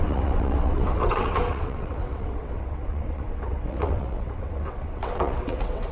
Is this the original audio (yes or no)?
no